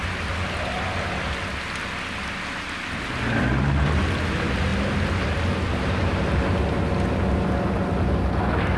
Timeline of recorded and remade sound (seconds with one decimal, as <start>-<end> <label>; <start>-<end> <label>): 0.0-8.8 recorded